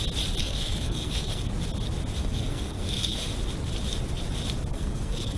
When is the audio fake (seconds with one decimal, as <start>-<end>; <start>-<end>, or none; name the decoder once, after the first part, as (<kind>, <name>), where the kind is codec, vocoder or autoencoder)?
0.4-1.5 (codec, SNAC); 2.2-3.3; 4.7-5.4